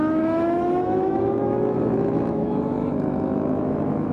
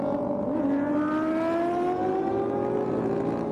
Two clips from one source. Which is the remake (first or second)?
first